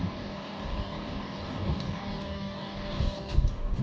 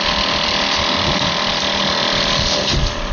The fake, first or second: first